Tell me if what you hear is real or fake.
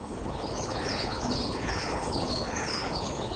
fake